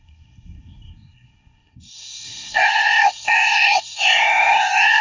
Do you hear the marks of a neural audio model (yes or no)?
yes